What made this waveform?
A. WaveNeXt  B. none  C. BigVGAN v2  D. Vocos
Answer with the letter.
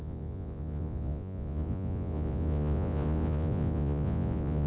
D